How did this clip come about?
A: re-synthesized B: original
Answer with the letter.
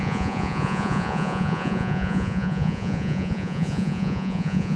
A